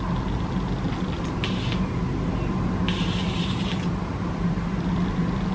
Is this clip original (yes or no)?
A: yes